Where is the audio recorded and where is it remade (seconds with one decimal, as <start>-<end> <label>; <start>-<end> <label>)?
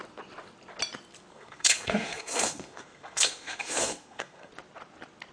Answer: 0.0-1.3 recorded; 1.3-4.5 remade; 4.5-5.3 recorded